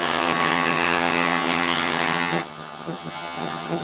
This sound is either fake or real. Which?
fake